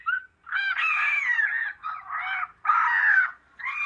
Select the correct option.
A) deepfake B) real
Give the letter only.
B